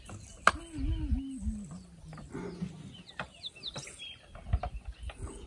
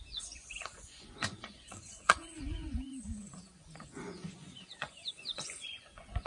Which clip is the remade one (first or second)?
second